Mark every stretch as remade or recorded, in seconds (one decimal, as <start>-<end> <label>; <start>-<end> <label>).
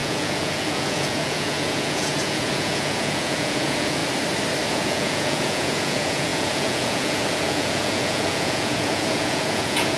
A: 0.0-4.0 remade; 4.0-4.7 recorded; 4.7-10.0 remade